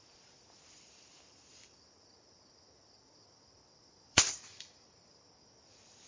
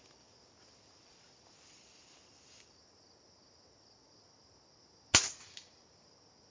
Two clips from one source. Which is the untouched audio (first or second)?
second